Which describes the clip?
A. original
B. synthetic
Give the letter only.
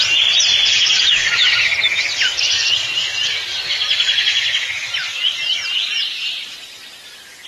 A